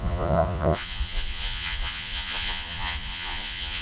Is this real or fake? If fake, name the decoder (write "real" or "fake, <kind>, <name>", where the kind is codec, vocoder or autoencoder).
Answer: fake, vocoder, Vocos